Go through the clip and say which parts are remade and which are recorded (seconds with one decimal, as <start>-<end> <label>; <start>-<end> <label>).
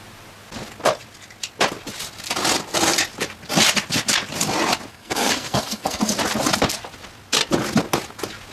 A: 0.0-4.9 recorded; 4.9-6.1 remade; 6.1-8.5 recorded